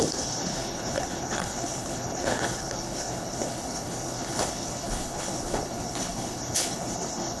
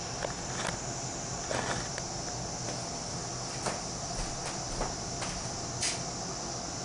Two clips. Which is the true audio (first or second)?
second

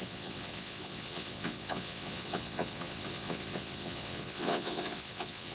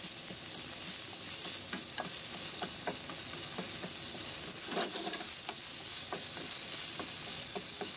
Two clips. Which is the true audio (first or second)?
second